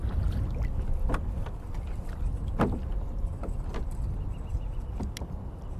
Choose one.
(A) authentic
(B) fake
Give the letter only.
A